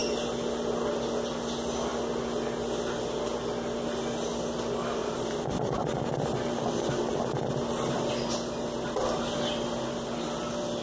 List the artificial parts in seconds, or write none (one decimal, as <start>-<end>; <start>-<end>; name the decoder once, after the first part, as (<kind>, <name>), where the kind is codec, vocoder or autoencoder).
5.0-8.1 (vocoder, BigVGAN v2)